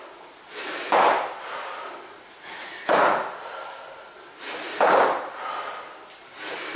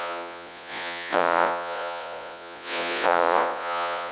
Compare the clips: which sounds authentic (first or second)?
first